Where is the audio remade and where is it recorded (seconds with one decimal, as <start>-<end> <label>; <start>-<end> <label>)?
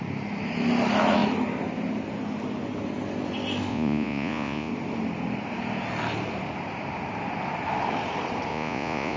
0.0-3.7 recorded; 3.7-4.7 remade; 4.7-8.5 recorded; 8.5-9.2 remade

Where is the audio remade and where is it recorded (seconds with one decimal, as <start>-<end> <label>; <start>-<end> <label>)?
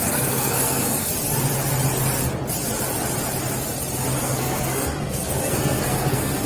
0.0-1.1 remade; 1.1-4.2 recorded; 4.2-6.5 remade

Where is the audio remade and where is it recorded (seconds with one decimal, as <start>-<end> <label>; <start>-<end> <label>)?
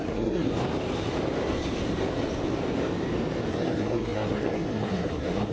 0.0-0.5 remade; 0.5-3.5 recorded; 3.5-5.5 remade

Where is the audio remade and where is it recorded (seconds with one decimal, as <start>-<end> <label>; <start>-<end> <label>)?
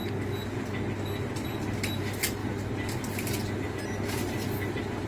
0.0-5.1 recorded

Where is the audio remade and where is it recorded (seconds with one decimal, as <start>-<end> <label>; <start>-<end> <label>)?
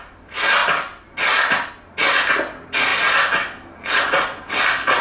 0.0-5.0 recorded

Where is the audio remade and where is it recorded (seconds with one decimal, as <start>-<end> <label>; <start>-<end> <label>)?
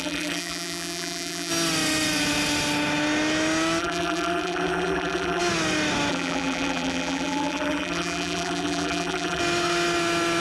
0.0-1.5 remade; 1.5-3.8 recorded; 3.8-5.4 remade; 5.4-6.1 recorded; 6.1-9.4 remade; 9.4-10.4 recorded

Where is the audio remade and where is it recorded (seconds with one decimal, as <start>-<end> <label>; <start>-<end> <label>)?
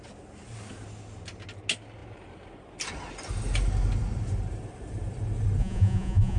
0.0-5.6 recorded; 5.6-6.4 remade